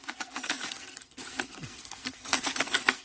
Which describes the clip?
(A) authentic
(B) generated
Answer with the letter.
B